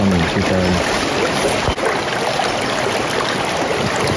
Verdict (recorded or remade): recorded